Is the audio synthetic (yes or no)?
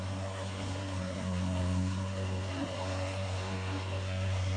yes